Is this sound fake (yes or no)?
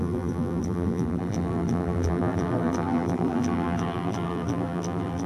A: yes